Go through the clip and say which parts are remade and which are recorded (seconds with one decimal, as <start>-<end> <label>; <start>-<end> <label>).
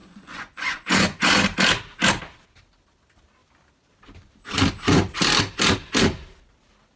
0.0-1.4 remade; 1.4-7.0 recorded